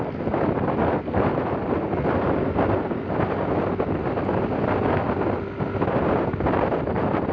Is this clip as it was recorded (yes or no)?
yes